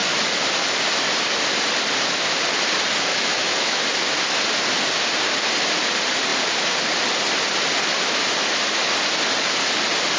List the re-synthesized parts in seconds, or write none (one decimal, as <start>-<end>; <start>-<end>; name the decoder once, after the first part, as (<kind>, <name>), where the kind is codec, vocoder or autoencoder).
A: 3.1-3.8 (autoencoder, DAC-VAE)